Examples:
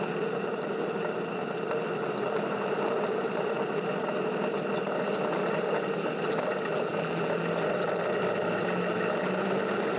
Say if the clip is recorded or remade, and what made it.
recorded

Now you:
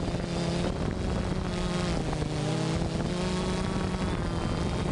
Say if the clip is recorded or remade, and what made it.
recorded